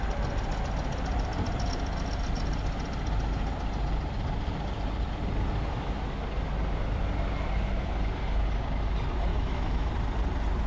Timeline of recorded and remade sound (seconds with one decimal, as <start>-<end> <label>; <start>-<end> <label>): 0.0-9.3 recorded; 9.3-9.9 remade; 9.9-10.7 recorded